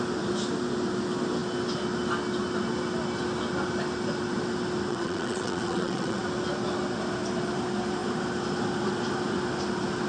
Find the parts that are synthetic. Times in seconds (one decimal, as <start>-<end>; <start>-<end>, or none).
4.9-6.2